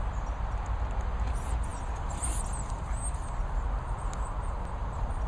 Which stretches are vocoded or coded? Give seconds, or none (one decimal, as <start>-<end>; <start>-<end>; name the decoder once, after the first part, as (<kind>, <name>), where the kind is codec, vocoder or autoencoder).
none